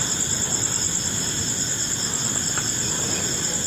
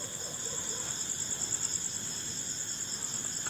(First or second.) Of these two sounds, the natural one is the second